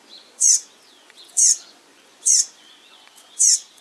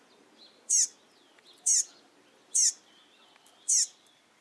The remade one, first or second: first